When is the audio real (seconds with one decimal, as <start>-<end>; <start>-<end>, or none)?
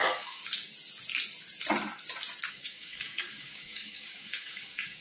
0.4-2.5